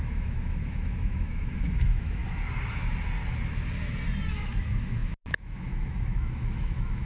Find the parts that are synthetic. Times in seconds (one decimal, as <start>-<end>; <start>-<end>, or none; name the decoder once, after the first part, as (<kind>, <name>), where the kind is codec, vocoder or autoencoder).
0.0-2.2 (autoencoder, DAC-VAE); 4.3-7.0